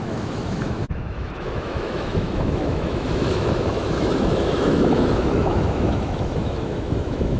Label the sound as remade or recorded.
remade